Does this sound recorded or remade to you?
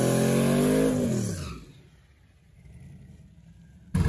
recorded